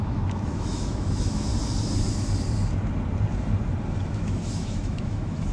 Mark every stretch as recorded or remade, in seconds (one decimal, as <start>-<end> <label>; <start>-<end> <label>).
0.0-1.5 remade; 1.5-4.1 recorded; 4.1-5.5 remade